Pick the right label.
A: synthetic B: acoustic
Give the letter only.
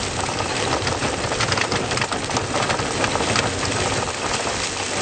B